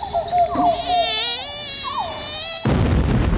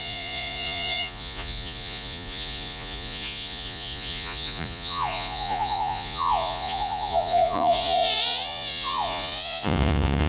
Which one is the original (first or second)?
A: first